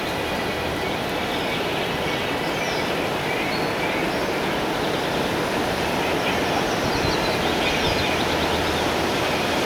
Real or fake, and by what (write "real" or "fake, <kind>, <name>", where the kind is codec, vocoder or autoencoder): real